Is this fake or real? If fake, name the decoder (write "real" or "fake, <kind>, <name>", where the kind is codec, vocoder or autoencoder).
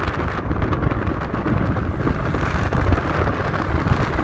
real